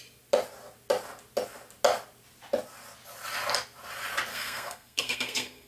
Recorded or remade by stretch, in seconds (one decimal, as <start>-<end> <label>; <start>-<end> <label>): 0.0-4.3 recorded; 4.3-5.7 remade